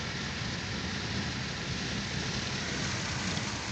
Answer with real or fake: real